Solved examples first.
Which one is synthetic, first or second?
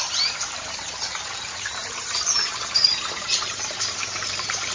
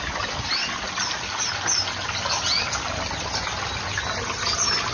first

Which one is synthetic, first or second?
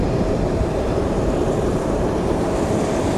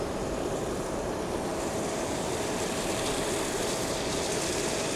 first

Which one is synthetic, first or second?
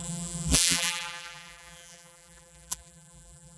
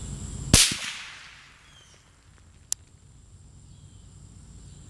first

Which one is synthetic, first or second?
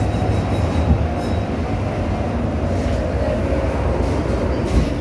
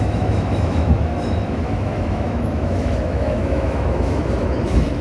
second